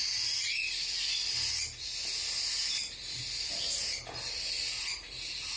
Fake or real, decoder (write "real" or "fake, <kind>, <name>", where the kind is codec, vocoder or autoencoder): real